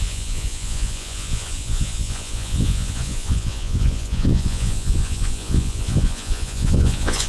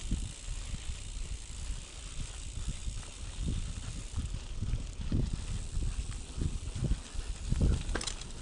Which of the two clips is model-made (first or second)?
first